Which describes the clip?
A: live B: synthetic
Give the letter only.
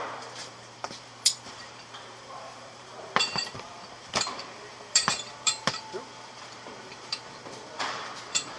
B